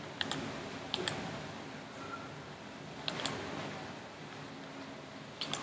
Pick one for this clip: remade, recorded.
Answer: recorded